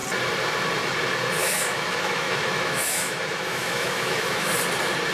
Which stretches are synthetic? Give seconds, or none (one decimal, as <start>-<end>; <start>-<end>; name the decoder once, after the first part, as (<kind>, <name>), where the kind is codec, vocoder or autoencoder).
1.4-4.5 (autoencoder, DAC-VAE)